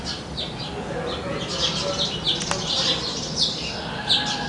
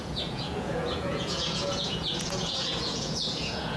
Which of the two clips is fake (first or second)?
second